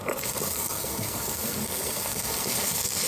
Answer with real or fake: fake